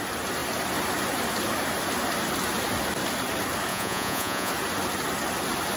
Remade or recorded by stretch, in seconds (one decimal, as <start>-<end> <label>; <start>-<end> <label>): 0.0-3.7 recorded; 3.7-4.5 remade; 4.5-5.8 recorded

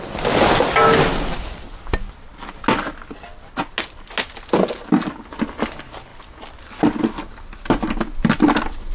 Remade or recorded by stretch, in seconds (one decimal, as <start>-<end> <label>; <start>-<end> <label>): 0.0-8.9 recorded

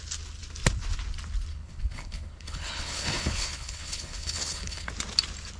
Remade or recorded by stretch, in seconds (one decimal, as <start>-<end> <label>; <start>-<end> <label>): 0.0-1.5 recorded; 1.5-4.9 remade; 4.9-5.6 recorded

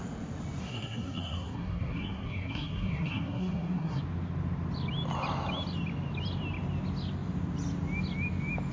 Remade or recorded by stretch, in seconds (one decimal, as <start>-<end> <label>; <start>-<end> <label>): 0.0-0.6 recorded; 0.6-4.0 remade; 4.0-8.7 recorded

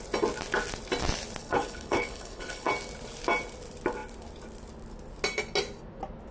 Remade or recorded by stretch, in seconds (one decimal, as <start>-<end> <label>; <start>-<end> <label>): 0.0-1.4 recorded; 1.4-2.7 remade; 2.7-6.3 recorded

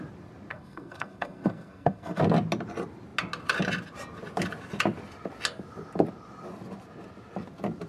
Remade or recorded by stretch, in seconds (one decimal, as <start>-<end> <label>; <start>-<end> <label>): 0.0-0.5 recorded; 0.5-2.2 remade; 2.2-7.9 recorded

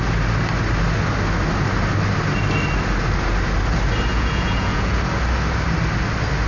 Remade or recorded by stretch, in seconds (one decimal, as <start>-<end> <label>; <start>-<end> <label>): 0.0-4.1 recorded; 4.1-5.0 remade; 5.0-6.5 recorded